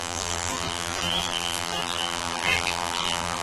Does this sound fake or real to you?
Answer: fake